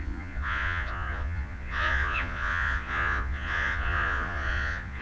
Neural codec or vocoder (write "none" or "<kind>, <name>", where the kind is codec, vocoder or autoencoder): vocoder, Vocos